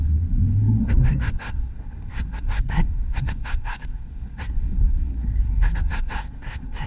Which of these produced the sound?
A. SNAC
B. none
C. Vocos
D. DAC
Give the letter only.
A